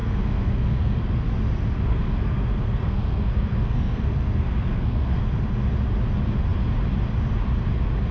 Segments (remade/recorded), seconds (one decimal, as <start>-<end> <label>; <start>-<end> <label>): 0.0-1.0 remade; 1.0-1.9 recorded; 1.9-5.2 remade; 5.2-8.1 recorded